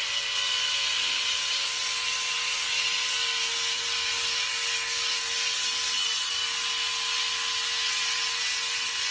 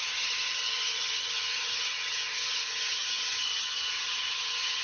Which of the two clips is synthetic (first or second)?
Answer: second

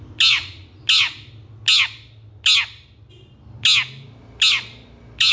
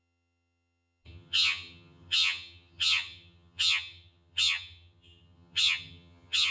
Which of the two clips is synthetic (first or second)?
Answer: second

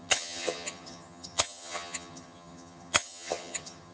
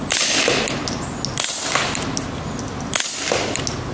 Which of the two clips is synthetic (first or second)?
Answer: first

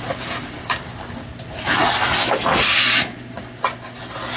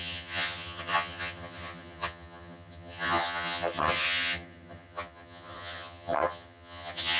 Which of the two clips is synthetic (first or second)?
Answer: second